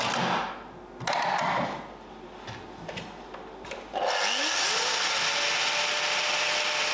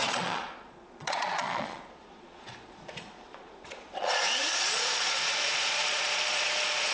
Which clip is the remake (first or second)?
second